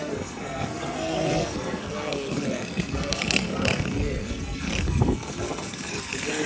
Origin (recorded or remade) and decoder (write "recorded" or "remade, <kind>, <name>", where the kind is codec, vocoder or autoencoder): remade, codec, SNAC